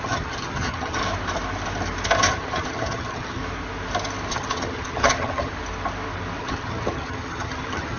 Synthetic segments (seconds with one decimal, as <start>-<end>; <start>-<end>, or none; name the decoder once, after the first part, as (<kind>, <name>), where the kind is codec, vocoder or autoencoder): 0.0-1.0 (vocoder, HiFi-GAN); 2.3-3.4; 4.3-5.5; 6.4-8.0